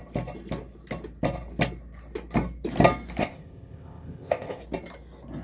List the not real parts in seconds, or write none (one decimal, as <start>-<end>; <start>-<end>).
3.2-4.6